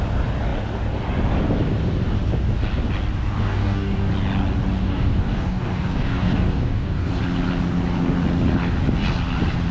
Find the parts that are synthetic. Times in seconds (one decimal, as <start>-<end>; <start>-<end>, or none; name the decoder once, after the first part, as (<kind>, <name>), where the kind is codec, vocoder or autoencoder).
3.4-4.1 (codec, DAC); 4.8-7.2